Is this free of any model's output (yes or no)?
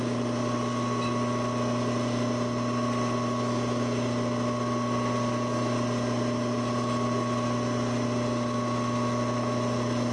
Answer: yes